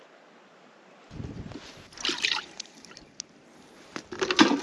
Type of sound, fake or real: real